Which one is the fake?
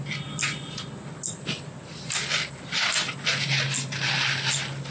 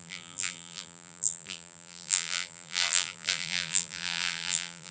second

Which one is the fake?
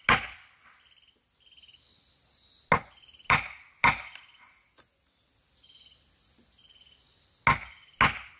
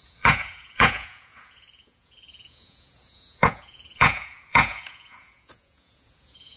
second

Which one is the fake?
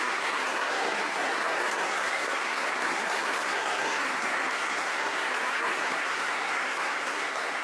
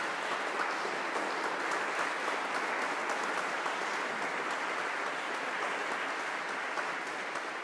first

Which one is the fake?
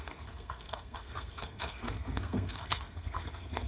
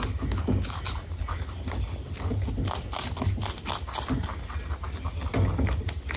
first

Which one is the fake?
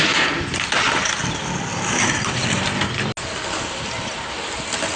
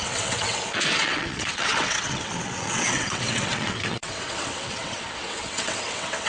second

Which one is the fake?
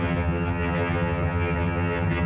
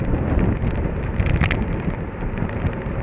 first